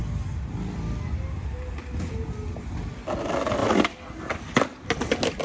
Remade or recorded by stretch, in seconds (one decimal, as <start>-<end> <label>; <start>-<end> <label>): 0.0-5.4 recorded